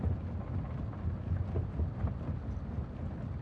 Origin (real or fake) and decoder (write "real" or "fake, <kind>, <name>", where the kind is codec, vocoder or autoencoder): real